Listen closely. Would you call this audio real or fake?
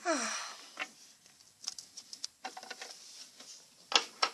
real